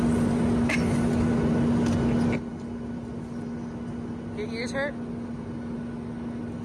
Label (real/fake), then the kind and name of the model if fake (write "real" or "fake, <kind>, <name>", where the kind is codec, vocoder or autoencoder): real